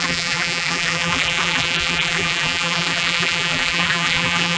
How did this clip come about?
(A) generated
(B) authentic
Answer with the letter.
A